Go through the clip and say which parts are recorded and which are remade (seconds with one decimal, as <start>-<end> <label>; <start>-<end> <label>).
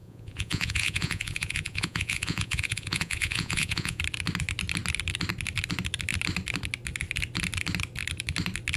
0.0-4.0 remade; 4.0-8.8 recorded